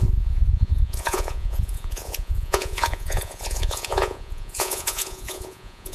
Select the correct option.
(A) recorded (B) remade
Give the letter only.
B